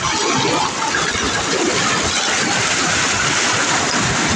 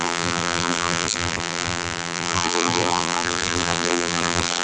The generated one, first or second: second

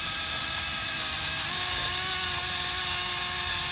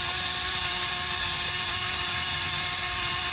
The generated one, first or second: second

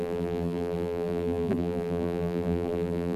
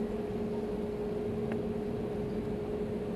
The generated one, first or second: first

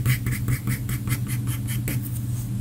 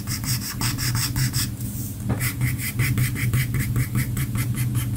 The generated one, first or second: second